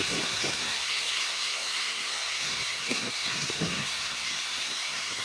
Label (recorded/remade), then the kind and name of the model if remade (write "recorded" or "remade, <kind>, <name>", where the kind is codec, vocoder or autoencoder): remade, codec, SNAC